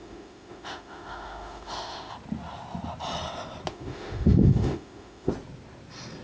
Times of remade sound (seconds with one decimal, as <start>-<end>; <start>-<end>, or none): 0.0-2.1; 3.7-5.3